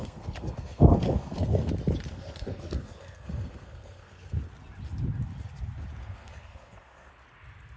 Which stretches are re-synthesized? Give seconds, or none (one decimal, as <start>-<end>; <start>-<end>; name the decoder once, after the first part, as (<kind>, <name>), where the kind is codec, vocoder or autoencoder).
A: 0.0-1.7 (codec, SNAC); 2.1-4.4; 6.0-7.1